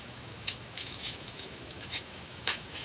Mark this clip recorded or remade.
remade